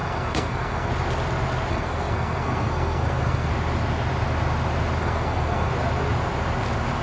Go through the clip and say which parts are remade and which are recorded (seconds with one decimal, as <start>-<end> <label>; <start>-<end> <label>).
0.0-0.9 remade; 0.9-1.7 recorded; 1.7-3.5 remade; 3.5-5.0 recorded; 5.0-5.7 remade; 5.7-7.0 recorded